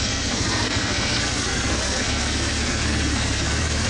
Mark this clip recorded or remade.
remade